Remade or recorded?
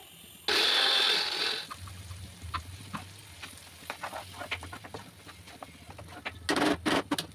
recorded